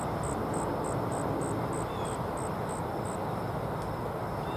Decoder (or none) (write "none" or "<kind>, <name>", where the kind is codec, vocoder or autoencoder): none